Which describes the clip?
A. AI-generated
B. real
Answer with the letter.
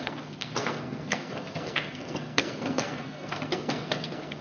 A